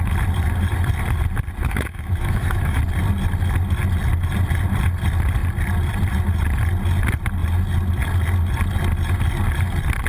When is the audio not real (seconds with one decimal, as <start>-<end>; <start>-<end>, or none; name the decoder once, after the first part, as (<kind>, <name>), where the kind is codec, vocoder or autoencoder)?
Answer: 1.6-2.8 (autoencoder, DAC-VAE)